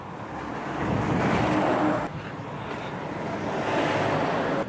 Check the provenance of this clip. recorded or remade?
recorded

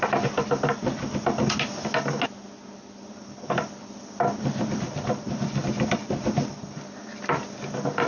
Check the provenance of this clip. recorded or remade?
recorded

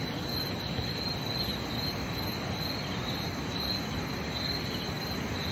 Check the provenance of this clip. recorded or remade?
recorded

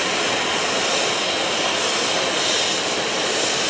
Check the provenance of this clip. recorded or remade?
recorded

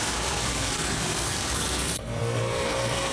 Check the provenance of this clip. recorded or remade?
remade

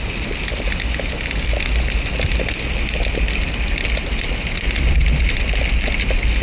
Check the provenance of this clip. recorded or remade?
recorded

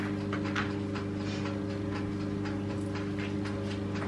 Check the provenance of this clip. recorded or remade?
recorded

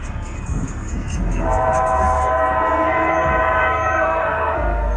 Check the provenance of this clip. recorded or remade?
remade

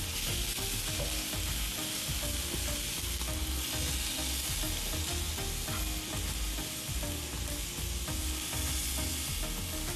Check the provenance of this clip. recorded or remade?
recorded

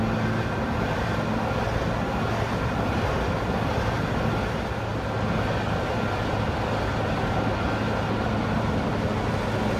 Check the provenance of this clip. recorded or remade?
recorded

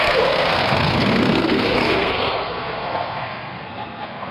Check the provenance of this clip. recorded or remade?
remade